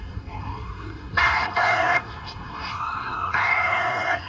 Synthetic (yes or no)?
yes